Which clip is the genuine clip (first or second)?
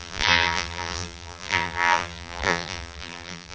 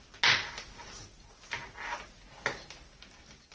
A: second